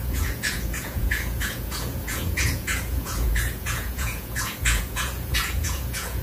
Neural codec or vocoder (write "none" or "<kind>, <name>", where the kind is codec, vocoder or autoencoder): vocoder, Vocos